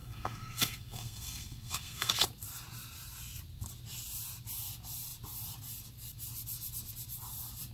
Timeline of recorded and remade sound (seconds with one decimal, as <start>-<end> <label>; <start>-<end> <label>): 0.0-2.1 remade; 2.1-7.7 recorded